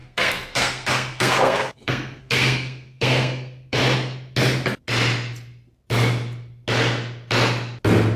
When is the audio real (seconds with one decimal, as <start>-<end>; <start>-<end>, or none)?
3.8-8.2